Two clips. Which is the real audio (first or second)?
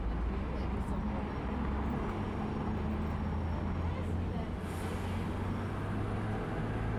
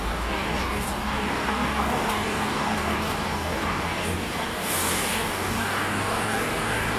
first